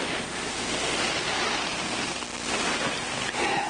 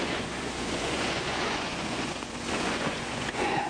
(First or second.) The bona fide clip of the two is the first